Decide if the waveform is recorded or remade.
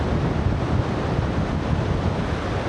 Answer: recorded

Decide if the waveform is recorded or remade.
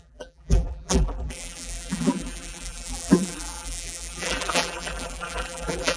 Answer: remade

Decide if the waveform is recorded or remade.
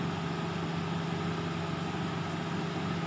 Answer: recorded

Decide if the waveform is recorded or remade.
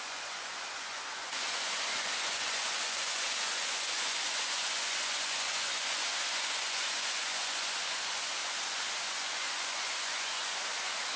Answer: remade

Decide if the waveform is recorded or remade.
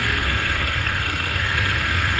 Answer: remade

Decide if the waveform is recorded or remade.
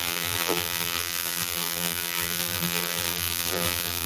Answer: remade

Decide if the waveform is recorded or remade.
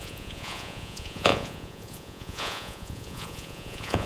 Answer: remade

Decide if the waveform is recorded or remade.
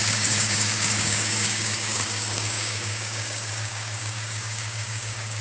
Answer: remade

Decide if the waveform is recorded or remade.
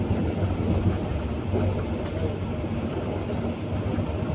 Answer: recorded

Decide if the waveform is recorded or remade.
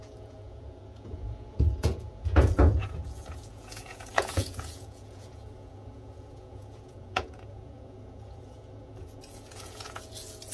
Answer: remade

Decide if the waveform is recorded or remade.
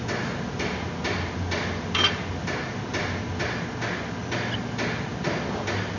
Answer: recorded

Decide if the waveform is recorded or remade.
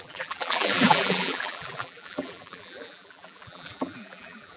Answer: remade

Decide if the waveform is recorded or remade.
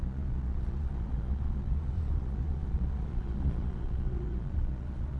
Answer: remade